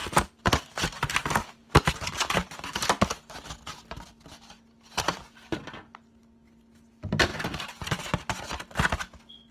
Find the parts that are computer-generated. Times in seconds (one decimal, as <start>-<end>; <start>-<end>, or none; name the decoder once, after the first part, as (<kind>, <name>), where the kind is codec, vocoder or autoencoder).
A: none